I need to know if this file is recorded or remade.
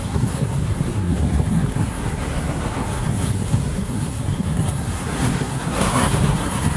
remade